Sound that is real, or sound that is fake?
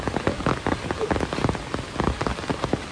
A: real